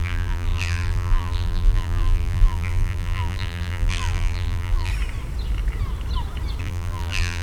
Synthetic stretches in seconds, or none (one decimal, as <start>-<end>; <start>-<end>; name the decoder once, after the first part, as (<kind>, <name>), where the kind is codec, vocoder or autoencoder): 0.0-4.9 (vocoder, BigVGAN v2); 6.6-7.4